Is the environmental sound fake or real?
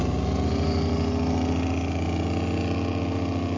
real